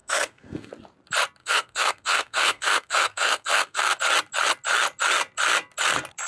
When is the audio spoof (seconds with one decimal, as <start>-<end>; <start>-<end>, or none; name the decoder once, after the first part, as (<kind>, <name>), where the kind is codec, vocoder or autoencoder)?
0.0-0.7 (codec, SNAC); 1.4-4.0